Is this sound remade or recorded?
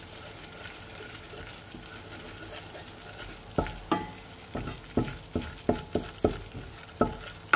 recorded